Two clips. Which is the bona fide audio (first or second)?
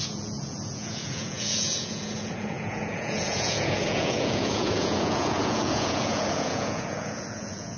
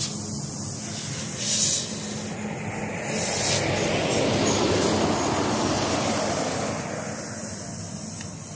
second